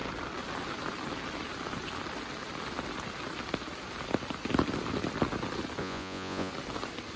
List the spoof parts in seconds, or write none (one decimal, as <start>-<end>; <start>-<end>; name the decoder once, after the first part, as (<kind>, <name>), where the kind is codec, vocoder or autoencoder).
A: 5.8-6.5 (vocoder, Vocos)